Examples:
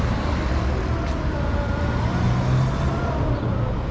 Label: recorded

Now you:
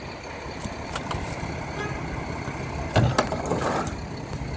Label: recorded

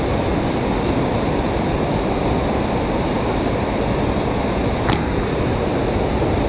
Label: recorded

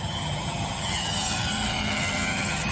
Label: remade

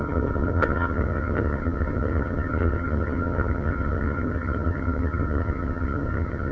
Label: remade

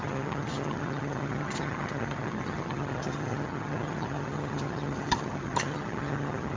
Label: remade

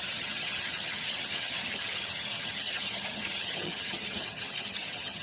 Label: remade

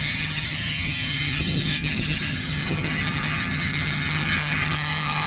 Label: remade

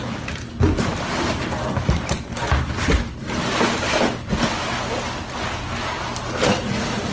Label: recorded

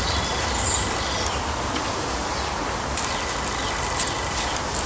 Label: recorded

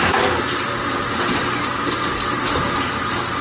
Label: recorded